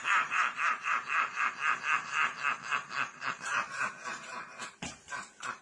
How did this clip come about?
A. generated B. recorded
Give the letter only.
A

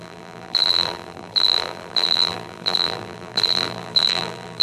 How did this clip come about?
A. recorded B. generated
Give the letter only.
B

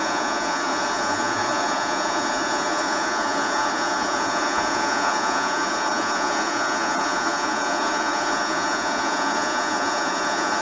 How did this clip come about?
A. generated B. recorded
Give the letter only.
A